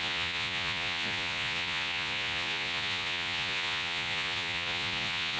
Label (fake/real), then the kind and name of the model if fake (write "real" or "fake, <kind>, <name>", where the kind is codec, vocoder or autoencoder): fake, vocoder, Vocos